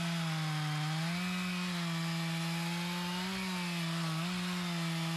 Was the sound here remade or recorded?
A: recorded